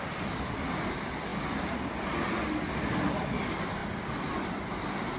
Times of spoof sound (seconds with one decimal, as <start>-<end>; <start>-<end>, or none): none